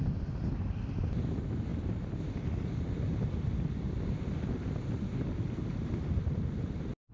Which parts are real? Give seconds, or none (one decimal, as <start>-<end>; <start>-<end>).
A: 0.0-7.1